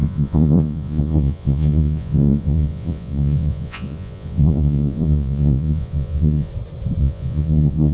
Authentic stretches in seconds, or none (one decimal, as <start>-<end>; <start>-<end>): 6.5-7.0